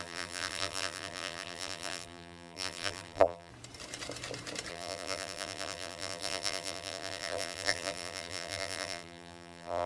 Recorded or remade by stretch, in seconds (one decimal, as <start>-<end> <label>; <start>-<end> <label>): 0.0-3.5 remade; 3.5-4.7 recorded; 4.7-9.9 remade